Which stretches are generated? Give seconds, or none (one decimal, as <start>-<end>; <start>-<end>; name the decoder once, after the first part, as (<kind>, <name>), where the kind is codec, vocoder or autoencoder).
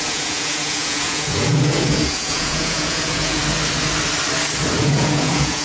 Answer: 0.0-3.4 (vocoder, Vocos); 4.8-5.6